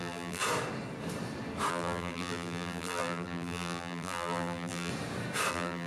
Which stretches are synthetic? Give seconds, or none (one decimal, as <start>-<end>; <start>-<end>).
0.0-0.4; 1.7-4.9; 5.5-5.9